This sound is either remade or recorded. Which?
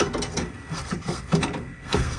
remade